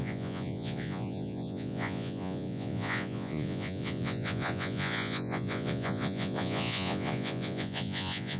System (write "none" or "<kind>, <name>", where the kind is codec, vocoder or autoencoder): vocoder, Vocos